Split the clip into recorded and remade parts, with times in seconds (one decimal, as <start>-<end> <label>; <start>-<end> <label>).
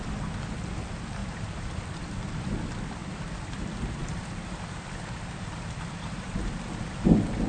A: 0.0-1.2 recorded; 1.2-2.5 remade; 2.5-3.0 recorded; 3.0-3.6 remade; 3.6-4.0 recorded; 4.0-7.1 remade; 7.1-7.5 recorded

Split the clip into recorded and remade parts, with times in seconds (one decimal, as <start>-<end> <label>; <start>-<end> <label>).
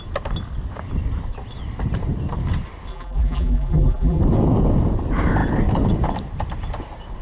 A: 0.0-2.9 recorded; 2.9-4.2 remade; 4.2-7.2 recorded